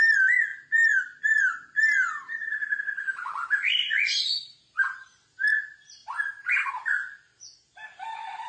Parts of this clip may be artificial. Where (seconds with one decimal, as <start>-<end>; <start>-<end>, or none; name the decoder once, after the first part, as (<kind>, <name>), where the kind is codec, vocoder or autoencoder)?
none